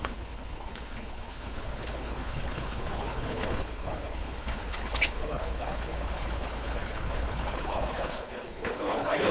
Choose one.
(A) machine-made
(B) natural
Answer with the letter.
A